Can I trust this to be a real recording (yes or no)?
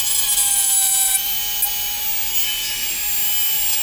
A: yes